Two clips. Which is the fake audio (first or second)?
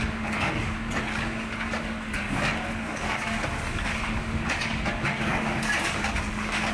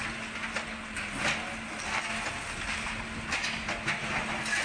first